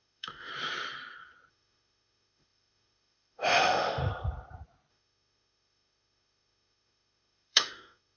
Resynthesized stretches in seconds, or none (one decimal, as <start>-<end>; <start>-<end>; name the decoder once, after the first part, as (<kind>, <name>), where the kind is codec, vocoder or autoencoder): 0.0-0.5 (autoencoder, DAC-VAE); 1.5-4.0; 4.9-8.2